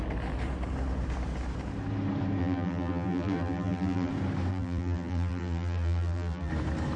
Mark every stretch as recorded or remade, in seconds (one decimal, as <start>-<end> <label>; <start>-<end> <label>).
0.0-2.4 recorded; 2.4-4.1 remade; 4.1-4.5 recorded; 4.5-6.5 remade; 6.5-7.0 recorded